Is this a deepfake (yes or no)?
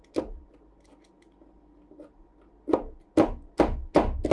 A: no